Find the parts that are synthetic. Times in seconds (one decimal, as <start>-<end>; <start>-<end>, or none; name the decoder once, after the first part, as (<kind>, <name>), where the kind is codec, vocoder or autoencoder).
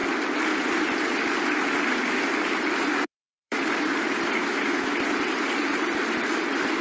2.8-6.8 (vocoder, BigVGAN v2)